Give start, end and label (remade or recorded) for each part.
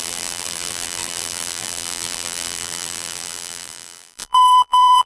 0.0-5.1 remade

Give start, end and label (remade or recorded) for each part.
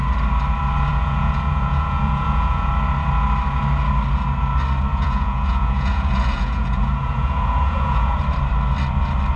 0.0-0.9 recorded; 0.9-2.7 remade; 2.7-4.9 recorded; 4.9-8.2 remade; 8.2-9.4 recorded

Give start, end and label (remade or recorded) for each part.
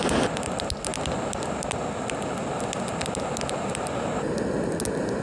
0.0-5.2 recorded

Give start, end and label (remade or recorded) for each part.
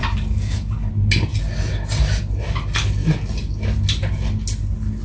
0.0-0.9 remade; 0.9-5.0 recorded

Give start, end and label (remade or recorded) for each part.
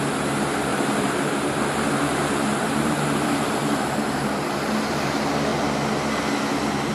0.0-0.7 recorded; 0.7-1.3 remade; 1.3-2.1 recorded; 2.1-4.3 remade; 4.3-6.9 recorded